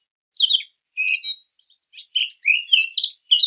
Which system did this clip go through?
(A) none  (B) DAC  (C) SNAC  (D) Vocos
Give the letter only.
A